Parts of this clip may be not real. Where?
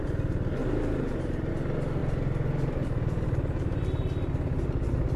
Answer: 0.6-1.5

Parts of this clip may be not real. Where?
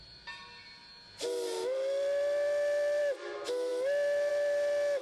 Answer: none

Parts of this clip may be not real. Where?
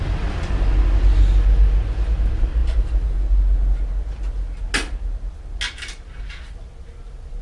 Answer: none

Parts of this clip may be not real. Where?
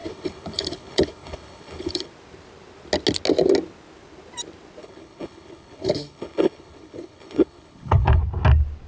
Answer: 0.0-2.1; 4.8-8.2